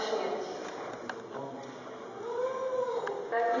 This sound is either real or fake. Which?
real